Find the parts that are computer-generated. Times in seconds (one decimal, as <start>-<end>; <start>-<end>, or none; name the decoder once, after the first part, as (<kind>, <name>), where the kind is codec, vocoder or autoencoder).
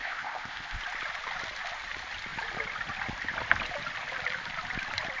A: 0.0-0.8 (codec, ZipCodec)